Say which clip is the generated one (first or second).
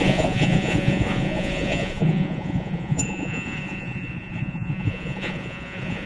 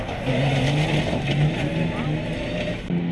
first